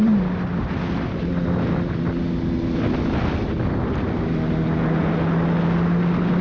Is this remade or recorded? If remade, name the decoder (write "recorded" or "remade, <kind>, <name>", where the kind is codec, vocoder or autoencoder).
recorded